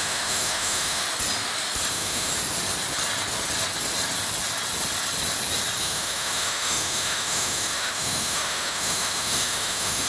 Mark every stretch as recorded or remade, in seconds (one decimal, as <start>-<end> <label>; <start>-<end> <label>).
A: 0.0-1.0 remade; 1.0-1.9 recorded; 1.9-2.3 remade; 2.3-5.8 recorded; 5.8-10.1 remade